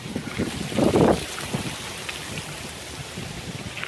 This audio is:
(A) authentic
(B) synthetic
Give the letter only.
A